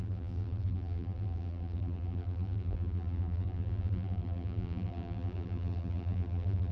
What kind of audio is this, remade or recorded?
remade